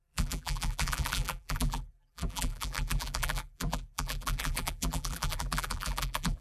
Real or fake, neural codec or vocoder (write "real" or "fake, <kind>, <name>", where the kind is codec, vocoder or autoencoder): fake, vocoder, BigVGAN v2